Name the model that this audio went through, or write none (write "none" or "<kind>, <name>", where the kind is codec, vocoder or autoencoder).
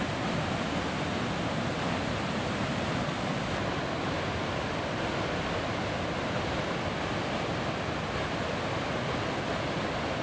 none